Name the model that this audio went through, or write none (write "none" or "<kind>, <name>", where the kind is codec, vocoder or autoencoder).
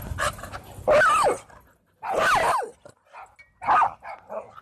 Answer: none